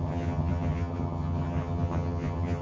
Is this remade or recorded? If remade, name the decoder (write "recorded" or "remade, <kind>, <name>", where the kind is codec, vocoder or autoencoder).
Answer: remade, vocoder, HiFi-GAN